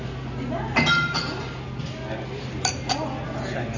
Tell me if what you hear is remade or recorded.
recorded